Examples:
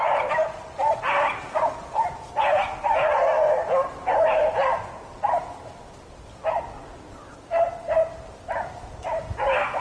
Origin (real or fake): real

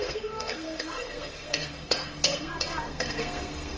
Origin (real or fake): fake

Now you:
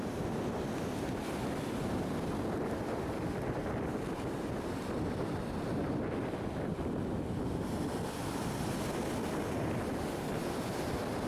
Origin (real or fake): real